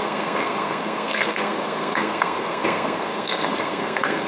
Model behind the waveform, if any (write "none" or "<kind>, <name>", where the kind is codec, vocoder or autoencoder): codec, SNAC